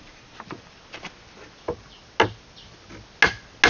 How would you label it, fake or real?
real